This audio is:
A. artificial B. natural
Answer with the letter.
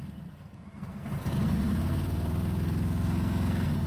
A